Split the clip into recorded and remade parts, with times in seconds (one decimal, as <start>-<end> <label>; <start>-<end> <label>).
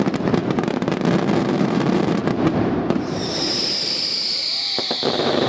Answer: 0.0-0.4 remade; 0.4-1.4 recorded; 1.4-5.5 remade